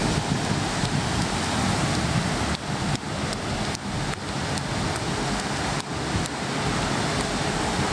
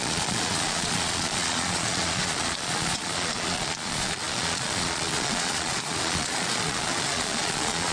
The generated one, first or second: second